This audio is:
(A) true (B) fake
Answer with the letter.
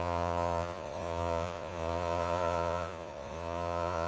B